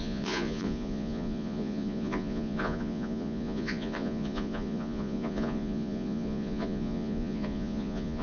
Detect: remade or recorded remade